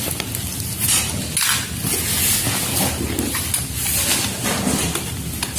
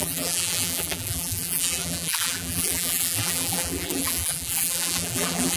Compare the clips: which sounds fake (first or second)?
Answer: second